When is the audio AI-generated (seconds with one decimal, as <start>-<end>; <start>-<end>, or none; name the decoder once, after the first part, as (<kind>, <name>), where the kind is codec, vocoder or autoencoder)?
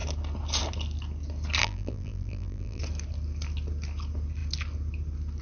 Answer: 1.6-2.8 (vocoder, BigVGAN v2)